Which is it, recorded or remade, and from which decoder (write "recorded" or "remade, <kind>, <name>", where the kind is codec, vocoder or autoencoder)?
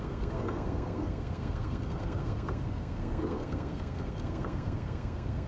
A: remade, codec, SNAC